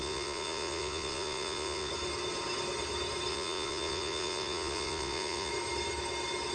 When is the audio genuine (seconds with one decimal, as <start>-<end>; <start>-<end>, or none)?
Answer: 1.9-3.3; 5.5-6.5